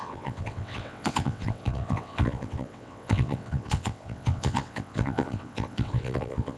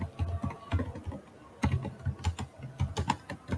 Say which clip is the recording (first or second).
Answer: second